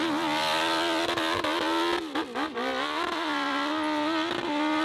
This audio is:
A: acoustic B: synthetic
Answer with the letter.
A